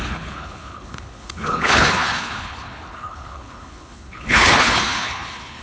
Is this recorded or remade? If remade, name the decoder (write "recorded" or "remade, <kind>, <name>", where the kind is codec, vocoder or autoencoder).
remade, codec, HILCodec